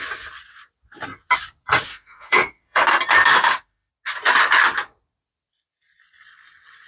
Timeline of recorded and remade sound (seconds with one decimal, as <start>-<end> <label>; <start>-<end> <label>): 0.0-1.9 recorded; 1.9-2.8 remade; 2.8-3.3 recorded; 3.3-3.9 remade; 3.9-6.9 recorded